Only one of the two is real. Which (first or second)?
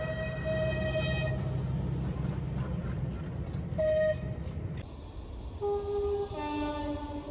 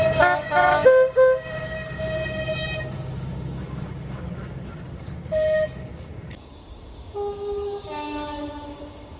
first